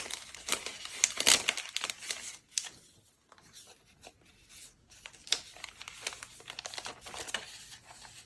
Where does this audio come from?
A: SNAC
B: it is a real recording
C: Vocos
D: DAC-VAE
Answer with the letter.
B